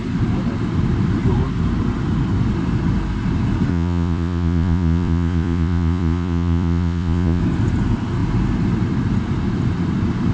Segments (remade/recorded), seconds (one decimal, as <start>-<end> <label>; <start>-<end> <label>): 0.0-3.7 recorded; 3.7-7.4 remade; 7.4-10.3 recorded